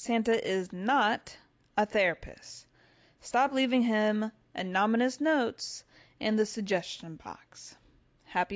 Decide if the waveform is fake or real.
real